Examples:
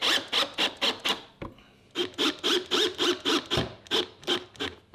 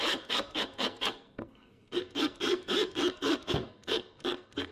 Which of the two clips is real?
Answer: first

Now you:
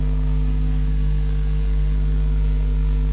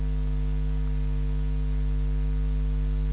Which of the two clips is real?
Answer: second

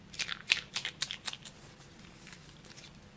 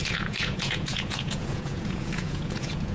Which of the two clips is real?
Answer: first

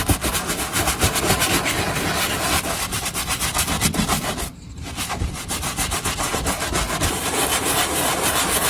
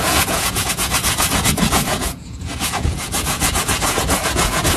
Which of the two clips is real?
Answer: first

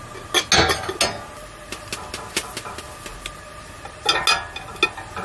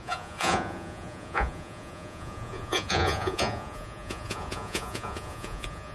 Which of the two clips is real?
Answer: first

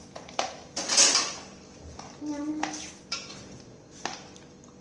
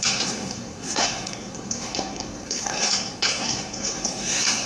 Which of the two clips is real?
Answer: first